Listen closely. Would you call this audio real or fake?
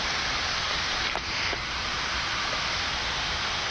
real